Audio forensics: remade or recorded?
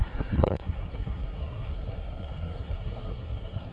remade